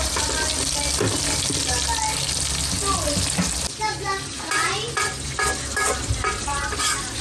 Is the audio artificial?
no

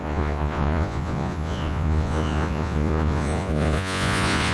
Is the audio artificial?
yes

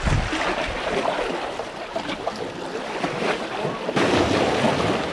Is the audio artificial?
no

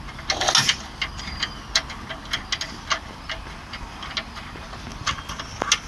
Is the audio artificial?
no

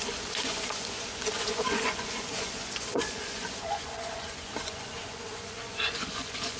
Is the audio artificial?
yes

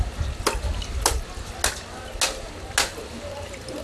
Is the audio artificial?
no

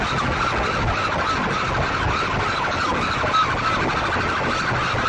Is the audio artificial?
no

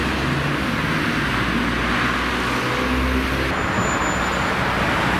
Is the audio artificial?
no